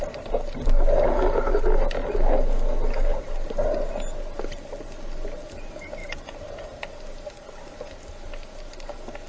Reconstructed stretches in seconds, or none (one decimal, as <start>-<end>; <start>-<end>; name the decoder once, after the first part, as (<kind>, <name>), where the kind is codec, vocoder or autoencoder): none